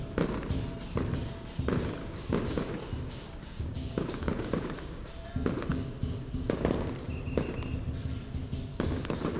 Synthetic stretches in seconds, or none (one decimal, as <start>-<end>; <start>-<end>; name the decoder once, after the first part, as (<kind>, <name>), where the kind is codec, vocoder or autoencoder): 2.0-5.1 (codec, DAC); 5.7-6.7; 8.7-9.4